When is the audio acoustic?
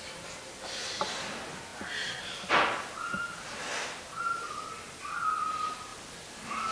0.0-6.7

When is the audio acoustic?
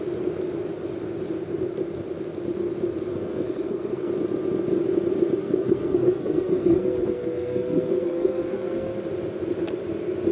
0.0-3.1; 4.1-5.4; 8.9-10.3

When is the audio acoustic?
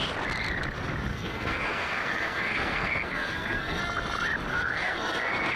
0.0-1.1; 3.8-4.5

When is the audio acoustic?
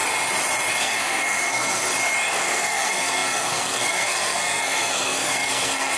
0.0-0.8; 1.8-2.3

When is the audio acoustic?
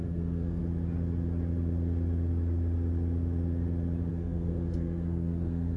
0.6-4.1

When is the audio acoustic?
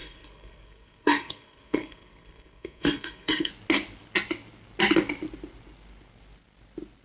3.5-7.0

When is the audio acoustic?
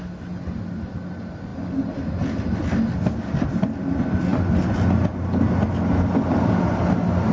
0.0-7.3